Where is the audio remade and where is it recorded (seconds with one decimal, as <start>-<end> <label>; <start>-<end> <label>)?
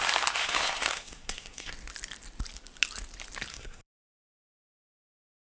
0.0-0.4 recorded; 0.4-1.7 remade; 1.7-3.5 recorded; 3.5-5.5 remade